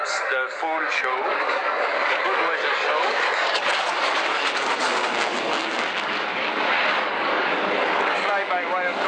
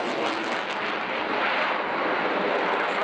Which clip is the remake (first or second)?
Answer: first